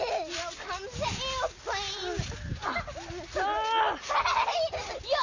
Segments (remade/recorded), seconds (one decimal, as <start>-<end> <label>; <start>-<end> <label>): 0.0-5.2 recorded